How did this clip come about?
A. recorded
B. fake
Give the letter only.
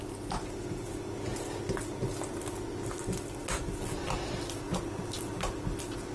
A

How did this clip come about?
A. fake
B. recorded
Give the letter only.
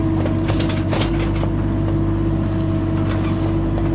B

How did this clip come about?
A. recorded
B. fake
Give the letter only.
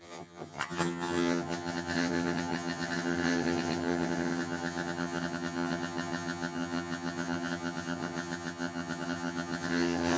B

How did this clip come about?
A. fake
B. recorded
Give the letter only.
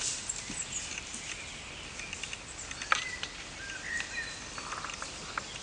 B